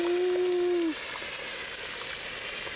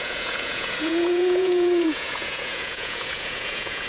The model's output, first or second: second